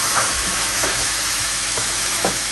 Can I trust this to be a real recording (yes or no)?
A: no